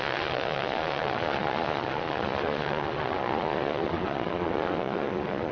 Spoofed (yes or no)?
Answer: yes